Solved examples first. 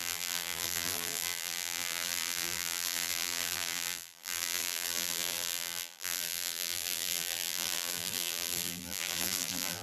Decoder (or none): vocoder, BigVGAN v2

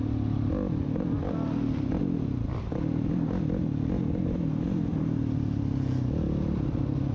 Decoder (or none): none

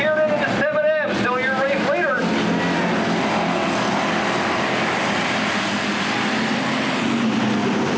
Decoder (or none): none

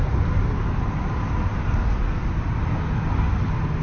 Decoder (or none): none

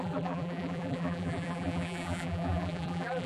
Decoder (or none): vocoder, BigVGAN v2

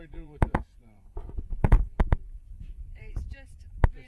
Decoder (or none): vocoder, Vocos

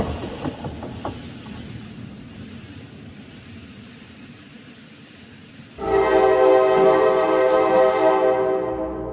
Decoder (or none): none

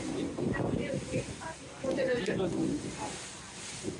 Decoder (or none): none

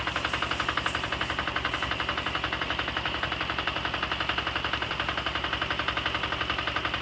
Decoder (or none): none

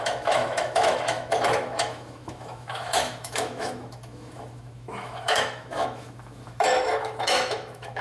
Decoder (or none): autoencoder, DAC-VAE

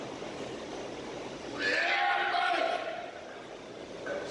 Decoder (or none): none